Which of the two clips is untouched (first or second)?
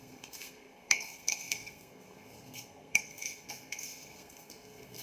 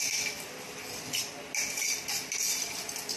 second